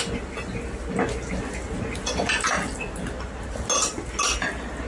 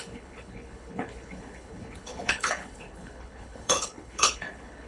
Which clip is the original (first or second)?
first